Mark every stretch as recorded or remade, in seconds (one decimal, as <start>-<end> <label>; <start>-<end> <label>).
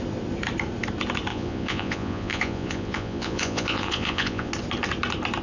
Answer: 0.0-1.3 recorded; 1.3-4.5 remade; 4.5-5.4 recorded